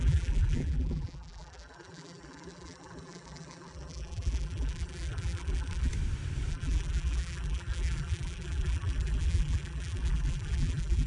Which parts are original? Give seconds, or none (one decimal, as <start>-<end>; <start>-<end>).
5.9-6.5